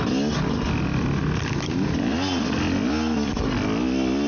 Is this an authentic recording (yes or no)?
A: yes